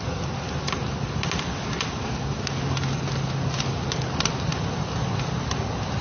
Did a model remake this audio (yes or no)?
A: no